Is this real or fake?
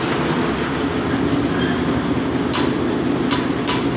real